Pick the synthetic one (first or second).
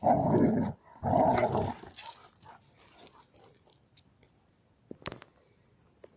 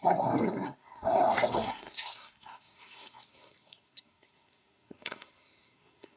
second